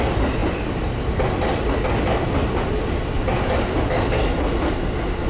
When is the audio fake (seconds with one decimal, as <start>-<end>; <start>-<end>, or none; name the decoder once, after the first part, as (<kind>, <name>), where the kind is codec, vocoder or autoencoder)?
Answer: none